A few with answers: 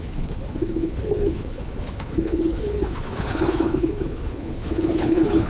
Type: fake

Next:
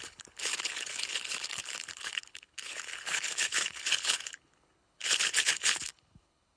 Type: fake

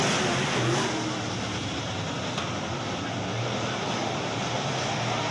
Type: real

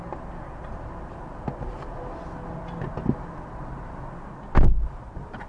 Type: real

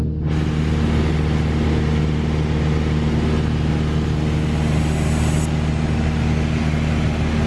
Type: real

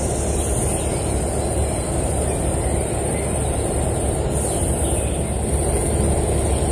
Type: real